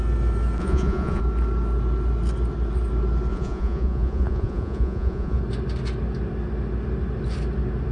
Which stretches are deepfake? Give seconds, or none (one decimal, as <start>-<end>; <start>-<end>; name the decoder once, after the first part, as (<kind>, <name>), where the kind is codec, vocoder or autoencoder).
0.6-1.2 (vocoder, Vocos); 3.3-5.4